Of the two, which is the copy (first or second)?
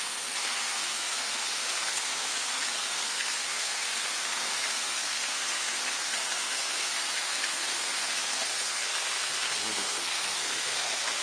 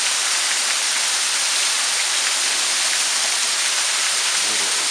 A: first